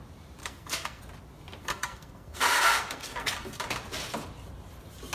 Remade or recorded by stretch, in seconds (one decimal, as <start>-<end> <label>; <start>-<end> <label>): 0.0-0.4 recorded; 0.4-1.0 remade; 1.0-1.6 recorded; 1.6-3.6 remade; 3.6-5.1 recorded